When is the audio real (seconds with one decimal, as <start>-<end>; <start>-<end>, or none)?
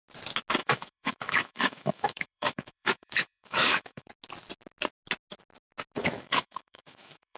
0.0-0.6; 4.1-6.0